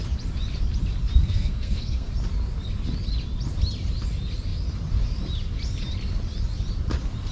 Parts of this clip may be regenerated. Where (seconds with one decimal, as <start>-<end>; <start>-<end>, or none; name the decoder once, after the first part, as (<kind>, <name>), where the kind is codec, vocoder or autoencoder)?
1.2-2.1 (codec, SNAC)